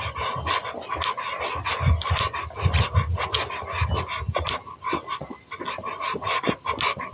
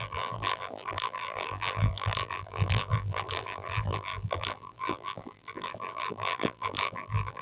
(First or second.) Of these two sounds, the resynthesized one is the second